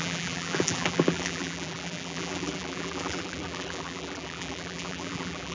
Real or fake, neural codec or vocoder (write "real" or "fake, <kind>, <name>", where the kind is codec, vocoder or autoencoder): fake, vocoder, BigVGAN v2